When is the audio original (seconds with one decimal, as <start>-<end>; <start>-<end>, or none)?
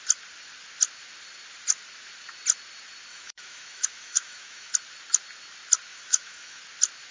0.0-3.1; 4.7-5.9; 6.6-7.1